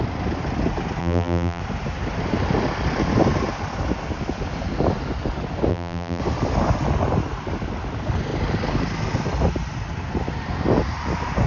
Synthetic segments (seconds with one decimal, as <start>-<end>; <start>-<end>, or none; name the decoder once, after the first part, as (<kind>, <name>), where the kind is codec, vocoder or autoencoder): 1.0-1.6 (vocoder, BigVGAN v2); 5.7-6.2